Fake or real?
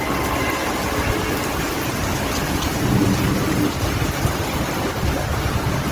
real